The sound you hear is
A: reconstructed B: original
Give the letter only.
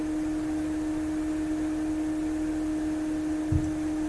B